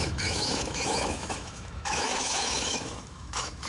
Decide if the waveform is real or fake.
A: fake